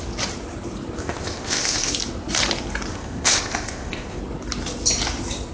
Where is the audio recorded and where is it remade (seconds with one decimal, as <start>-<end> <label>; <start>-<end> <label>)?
0.0-1.0 recorded; 1.0-1.9 remade; 1.9-2.9 recorded; 2.9-4.2 remade; 4.2-5.5 recorded